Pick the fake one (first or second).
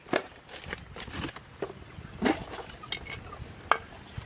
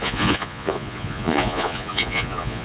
second